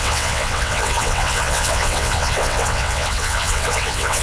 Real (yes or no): no